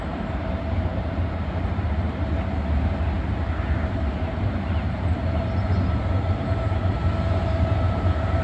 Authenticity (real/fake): fake